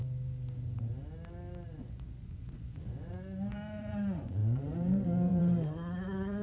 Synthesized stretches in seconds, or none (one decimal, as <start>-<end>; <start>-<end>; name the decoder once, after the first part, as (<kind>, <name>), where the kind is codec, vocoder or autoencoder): 1.8-6.4 (vocoder, Vocos)